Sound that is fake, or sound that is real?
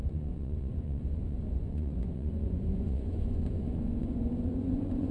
fake